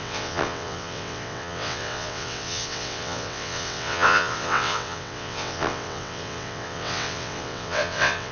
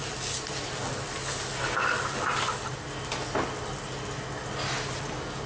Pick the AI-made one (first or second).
first